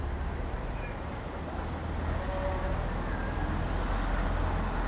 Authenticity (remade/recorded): recorded